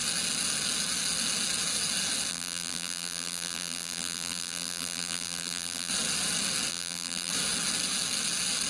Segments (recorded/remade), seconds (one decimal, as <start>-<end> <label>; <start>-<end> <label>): 0.0-2.3 recorded; 2.3-5.9 remade; 5.9-6.7 recorded; 6.7-7.3 remade; 7.3-8.7 recorded